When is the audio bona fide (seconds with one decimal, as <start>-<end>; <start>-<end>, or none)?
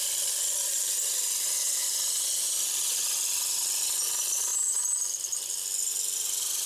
0.0-6.7